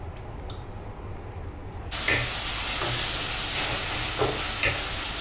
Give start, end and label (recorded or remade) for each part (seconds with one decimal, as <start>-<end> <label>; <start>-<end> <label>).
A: 0.0-5.2 recorded